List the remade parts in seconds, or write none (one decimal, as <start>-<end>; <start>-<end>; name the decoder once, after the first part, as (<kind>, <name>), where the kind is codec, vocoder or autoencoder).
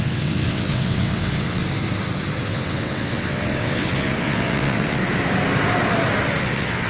0.0-1.6 (vocoder, WaveNeXt); 2.4-5.0; 6.4-6.9